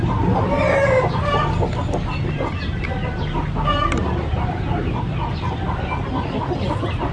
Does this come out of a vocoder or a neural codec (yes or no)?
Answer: no